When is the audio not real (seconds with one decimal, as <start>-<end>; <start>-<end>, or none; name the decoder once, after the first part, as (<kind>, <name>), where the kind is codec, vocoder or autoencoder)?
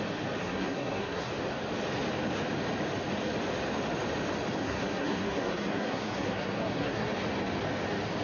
0.4-1.3 (codec, SNAC); 4.6-7.1